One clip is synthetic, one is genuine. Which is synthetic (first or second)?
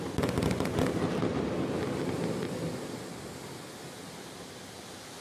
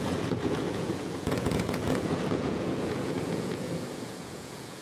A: second